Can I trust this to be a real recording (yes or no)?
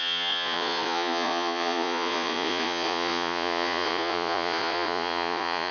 no